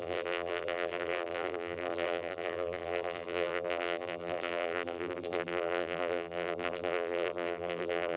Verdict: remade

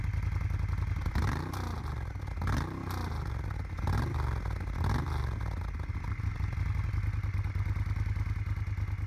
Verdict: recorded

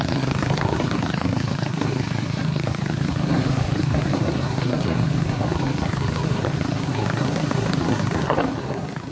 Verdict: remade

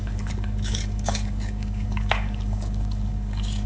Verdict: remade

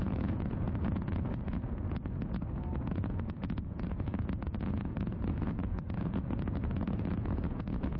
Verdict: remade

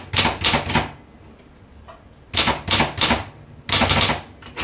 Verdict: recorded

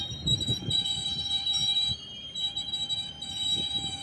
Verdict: remade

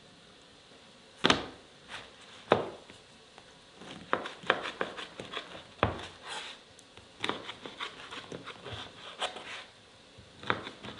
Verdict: recorded